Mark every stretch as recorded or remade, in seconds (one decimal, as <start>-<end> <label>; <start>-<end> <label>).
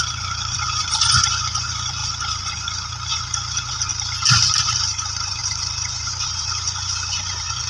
0.0-3.9 remade; 3.9-4.6 recorded; 4.6-7.7 remade